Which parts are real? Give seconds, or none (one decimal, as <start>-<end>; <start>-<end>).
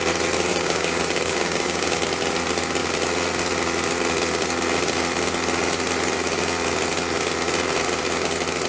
0.0-0.5; 2.0-8.7